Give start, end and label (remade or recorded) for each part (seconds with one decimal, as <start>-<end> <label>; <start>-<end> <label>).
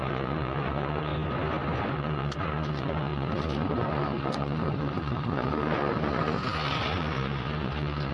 0.0-1.1 remade; 1.1-1.9 recorded; 1.9-8.1 remade